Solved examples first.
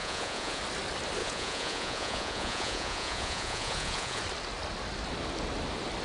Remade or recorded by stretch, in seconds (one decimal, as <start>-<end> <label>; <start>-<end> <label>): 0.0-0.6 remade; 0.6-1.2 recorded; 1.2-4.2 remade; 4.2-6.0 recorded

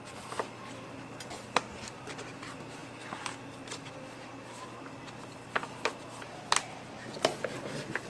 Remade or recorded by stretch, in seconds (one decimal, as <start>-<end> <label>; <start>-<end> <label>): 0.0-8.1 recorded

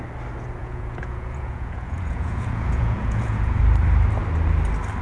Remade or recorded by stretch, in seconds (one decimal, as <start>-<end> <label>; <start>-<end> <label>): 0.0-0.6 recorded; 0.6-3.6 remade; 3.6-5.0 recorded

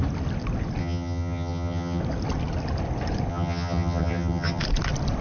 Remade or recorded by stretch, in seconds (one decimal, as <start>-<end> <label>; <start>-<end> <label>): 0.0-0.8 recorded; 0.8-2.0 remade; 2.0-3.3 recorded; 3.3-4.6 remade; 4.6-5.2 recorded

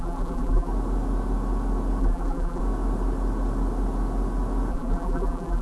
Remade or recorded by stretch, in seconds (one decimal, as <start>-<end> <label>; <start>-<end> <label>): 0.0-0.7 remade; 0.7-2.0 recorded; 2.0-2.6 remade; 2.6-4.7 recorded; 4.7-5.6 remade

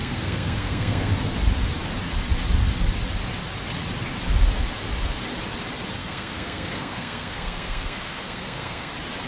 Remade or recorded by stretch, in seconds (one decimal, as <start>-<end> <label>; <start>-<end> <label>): 0.0-1.1 remade; 1.1-6.0 recorded; 6.0-8.9 remade; 8.9-9.3 recorded

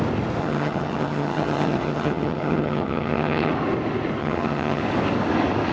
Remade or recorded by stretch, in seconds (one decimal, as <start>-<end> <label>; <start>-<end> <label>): 0.0-0.4 recorded; 0.4-3.5 remade; 3.5-4.2 recorded; 4.2-4.8 remade; 4.8-5.7 recorded

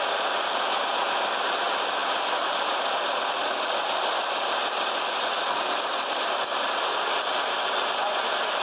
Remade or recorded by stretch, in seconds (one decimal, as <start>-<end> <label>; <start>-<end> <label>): 0.0-8.6 recorded